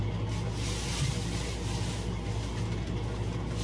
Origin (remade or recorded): recorded